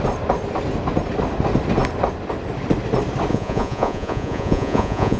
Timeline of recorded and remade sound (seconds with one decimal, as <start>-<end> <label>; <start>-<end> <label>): 0.0-3.3 recorded; 3.3-5.2 remade